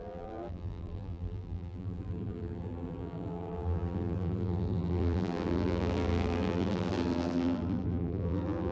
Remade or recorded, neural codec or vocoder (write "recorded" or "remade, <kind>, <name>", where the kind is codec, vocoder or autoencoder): remade, vocoder, BigVGAN v2